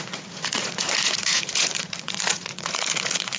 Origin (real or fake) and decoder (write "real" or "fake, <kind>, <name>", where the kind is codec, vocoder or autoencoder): fake, vocoder, Vocos